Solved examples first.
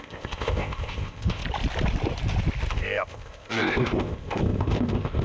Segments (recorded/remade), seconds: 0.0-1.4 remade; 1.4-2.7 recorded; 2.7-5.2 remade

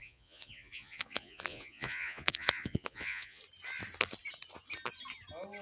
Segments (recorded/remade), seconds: 0.0-3.4 remade; 3.4-5.6 recorded